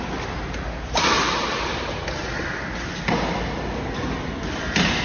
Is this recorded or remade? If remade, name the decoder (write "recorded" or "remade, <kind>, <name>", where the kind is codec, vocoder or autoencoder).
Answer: recorded